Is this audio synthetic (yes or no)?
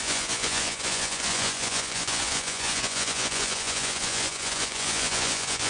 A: yes